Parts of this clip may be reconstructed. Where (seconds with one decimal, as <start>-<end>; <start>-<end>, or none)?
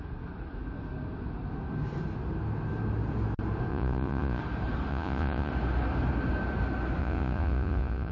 3.7-4.4; 4.9-5.5; 7.0-8.1